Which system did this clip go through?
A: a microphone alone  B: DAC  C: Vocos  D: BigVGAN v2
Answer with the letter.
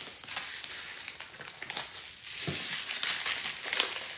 A